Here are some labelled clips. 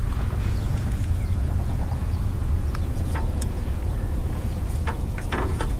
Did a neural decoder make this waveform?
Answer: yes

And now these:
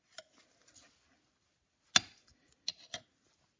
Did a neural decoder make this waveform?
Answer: no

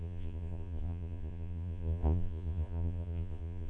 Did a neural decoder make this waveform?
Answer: yes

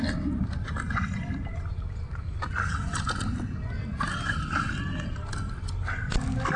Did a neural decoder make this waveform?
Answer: no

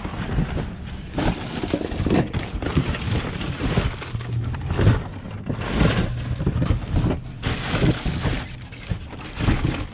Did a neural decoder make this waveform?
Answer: no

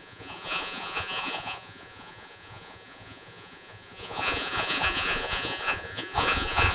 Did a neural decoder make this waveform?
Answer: yes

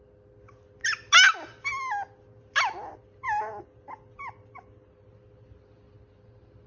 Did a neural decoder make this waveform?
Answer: no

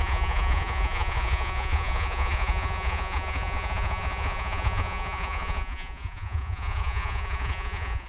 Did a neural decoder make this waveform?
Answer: yes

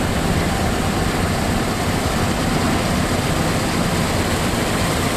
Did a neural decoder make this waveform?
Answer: no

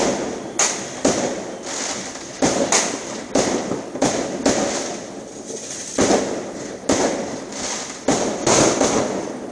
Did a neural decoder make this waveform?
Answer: no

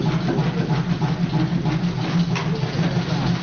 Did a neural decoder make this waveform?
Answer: no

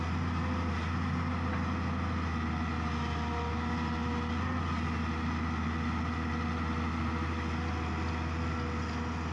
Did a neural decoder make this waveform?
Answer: no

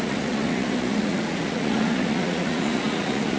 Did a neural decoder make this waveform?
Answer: yes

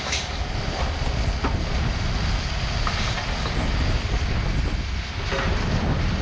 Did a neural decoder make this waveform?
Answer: no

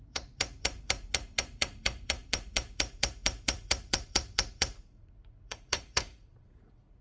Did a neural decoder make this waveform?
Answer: yes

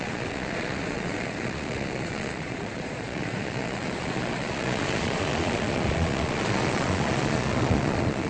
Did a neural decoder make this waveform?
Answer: yes